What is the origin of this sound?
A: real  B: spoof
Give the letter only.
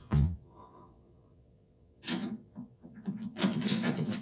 B